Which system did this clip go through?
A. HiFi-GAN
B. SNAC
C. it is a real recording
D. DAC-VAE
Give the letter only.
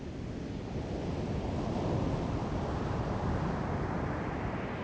C